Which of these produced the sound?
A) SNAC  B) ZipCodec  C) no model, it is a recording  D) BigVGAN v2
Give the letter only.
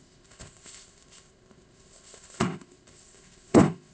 B